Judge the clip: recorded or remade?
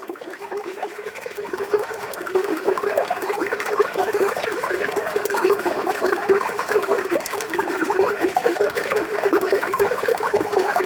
remade